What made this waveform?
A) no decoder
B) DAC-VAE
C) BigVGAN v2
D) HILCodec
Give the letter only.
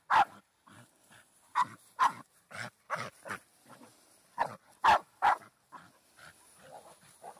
A